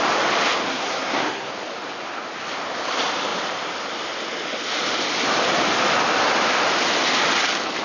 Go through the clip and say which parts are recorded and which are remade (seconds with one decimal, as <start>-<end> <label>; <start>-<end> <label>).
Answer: 0.0-0.7 recorded; 0.7-1.5 remade; 1.5-7.8 recorded